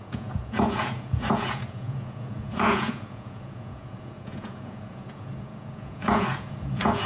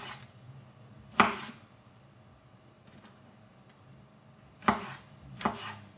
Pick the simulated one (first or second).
first